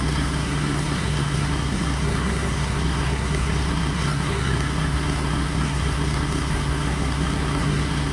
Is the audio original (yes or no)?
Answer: no